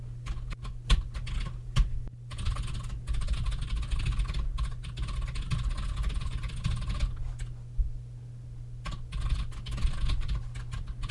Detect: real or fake real